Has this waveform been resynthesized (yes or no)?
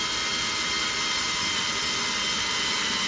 no